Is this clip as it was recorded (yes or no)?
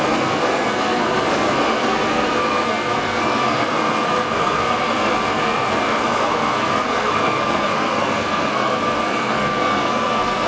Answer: no